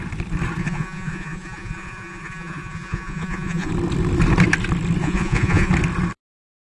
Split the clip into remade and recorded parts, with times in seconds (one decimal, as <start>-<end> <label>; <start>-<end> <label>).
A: 0.0-0.6 recorded; 0.6-3.7 remade; 3.7-5.0 recorded; 5.0-5.7 remade; 5.7-6.6 recorded